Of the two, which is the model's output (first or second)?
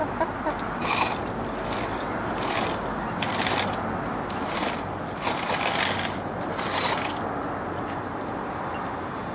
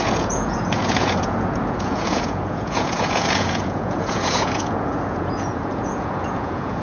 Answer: second